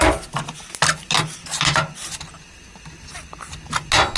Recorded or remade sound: recorded